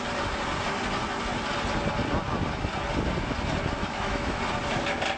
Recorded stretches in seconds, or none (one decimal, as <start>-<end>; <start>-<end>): 0.0-3.8; 4.4-5.2